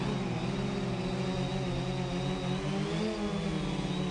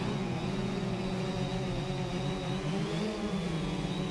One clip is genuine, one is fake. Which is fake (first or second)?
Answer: second